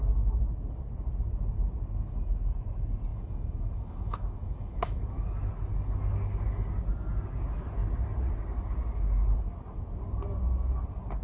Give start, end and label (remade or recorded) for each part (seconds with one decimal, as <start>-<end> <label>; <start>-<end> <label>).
0.0-3.1 recorded; 3.1-5.5 remade; 5.5-11.2 recorded

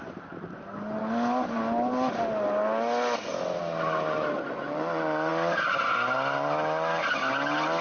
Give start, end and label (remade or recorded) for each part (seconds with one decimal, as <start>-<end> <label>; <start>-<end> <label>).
0.0-7.8 recorded

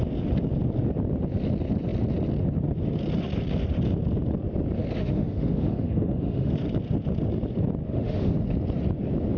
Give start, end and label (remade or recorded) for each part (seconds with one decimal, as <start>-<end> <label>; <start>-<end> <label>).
0.0-5.0 recorded; 5.0-6.5 remade; 6.5-7.8 recorded; 7.8-8.3 remade; 8.3-9.4 recorded

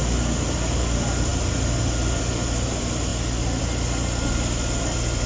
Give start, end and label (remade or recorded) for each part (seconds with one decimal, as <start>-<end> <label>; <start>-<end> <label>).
0.0-5.3 recorded

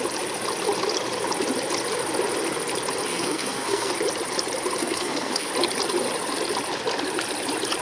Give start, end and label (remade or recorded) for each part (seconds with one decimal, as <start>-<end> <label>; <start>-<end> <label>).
0.0-3.1 recorded; 3.1-3.9 remade; 3.9-4.8 recorded; 4.8-5.5 remade; 5.5-7.8 recorded

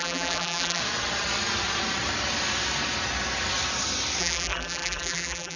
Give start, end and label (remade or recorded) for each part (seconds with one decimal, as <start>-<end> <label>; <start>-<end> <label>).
0.0-0.8 remade; 0.8-4.2 recorded; 4.2-5.6 remade

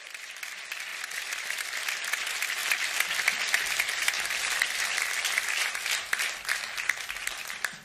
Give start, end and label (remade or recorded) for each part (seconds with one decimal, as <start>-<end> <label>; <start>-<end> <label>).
0.0-7.8 recorded